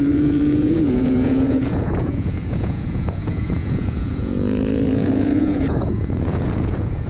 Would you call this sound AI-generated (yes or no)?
yes